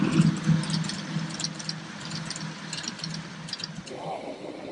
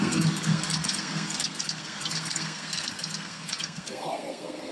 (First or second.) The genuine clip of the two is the first